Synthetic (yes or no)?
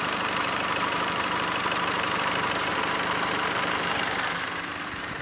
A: yes